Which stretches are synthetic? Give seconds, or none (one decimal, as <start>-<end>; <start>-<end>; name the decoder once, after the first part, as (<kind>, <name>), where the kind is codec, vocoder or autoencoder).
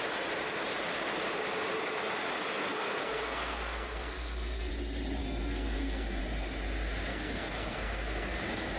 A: 2.7-4.7 (codec, SNAC); 5.2-6.2; 7.1-8.4